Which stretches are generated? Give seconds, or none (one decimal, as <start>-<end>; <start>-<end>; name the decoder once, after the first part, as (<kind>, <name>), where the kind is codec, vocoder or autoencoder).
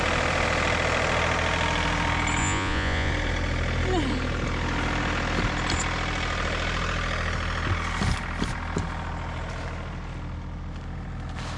2.4-3.1 (vocoder, Vocos)